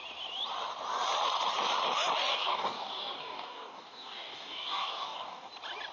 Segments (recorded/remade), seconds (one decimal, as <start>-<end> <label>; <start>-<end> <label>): 0.0-2.3 recorded; 2.3-5.5 remade; 5.5-5.9 recorded